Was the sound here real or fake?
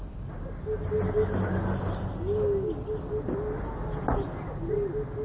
real